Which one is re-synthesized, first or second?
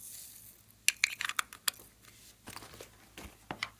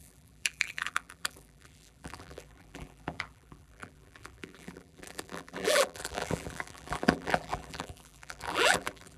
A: second